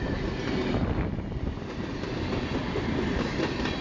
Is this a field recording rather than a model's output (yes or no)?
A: yes